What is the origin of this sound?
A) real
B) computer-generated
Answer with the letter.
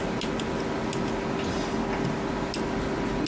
A